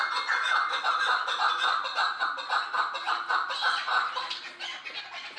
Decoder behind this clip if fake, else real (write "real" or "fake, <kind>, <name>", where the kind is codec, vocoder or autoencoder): real